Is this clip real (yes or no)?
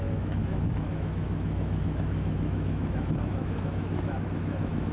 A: no